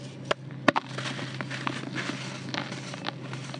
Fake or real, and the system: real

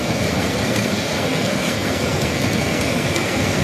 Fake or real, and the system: fake, codec, SNAC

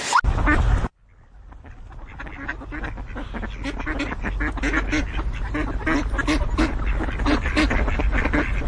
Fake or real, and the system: real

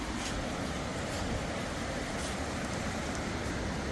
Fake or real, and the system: real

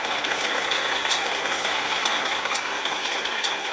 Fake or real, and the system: fake, codec, SNAC